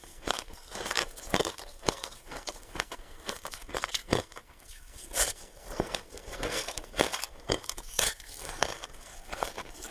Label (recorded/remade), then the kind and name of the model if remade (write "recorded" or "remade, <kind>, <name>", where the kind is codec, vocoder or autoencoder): remade, codec, SNAC